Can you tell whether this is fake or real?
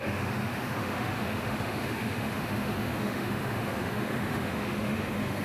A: fake